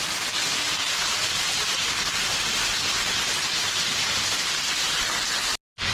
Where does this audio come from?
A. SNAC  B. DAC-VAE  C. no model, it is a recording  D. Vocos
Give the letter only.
C